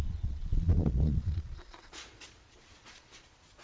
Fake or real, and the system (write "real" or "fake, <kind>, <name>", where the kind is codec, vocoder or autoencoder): fake, vocoder, Vocos